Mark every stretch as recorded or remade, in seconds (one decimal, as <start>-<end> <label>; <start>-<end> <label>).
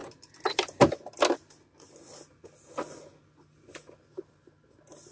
0.0-5.1 recorded